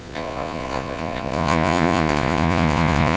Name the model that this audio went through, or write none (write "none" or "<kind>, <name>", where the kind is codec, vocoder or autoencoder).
vocoder, Vocos